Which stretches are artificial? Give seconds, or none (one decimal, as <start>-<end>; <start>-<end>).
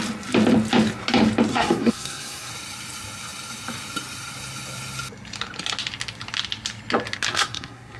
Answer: 1.5-2.5; 7.3-8.0